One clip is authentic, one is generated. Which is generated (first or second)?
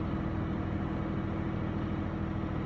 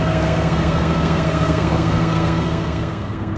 second